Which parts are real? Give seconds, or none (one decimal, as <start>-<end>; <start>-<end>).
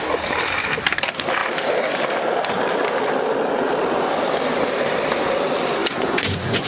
0.0-5.8